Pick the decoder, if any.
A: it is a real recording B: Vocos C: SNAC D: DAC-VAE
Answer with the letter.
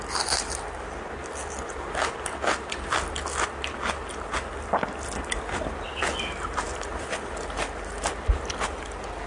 A